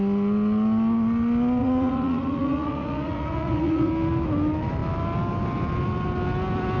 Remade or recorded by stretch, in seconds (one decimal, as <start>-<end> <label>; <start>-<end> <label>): 0.0-1.6 recorded; 1.6-3.9 remade; 3.9-6.8 recorded